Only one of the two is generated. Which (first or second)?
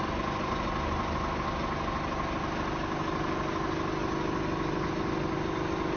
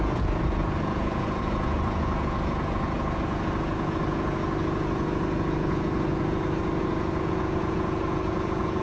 second